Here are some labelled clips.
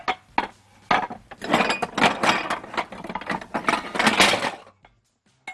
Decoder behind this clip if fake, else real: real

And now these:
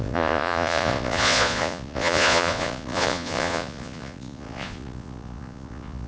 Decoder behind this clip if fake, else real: fake, vocoder, Vocos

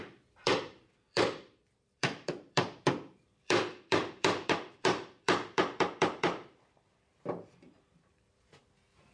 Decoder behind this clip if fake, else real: fake, vocoder, BigVGAN v2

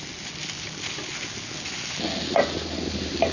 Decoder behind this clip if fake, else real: real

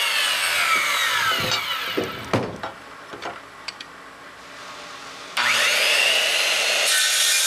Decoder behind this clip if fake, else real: real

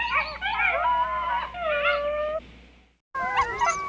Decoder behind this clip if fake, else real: real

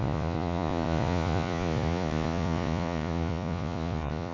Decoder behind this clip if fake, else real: fake, vocoder, Vocos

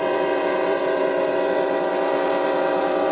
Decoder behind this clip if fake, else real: fake, vocoder, WaveNeXt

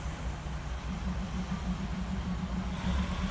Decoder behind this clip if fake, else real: real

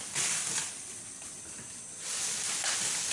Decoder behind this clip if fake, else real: real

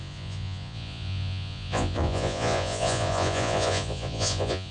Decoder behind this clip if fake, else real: fake, vocoder, Vocos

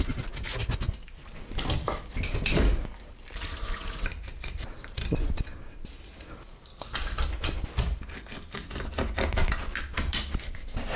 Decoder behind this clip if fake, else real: real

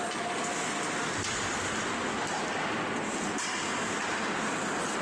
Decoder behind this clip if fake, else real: real